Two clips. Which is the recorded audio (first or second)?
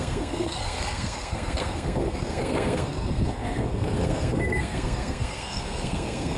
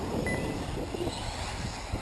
second